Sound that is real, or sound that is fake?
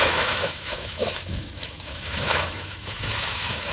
fake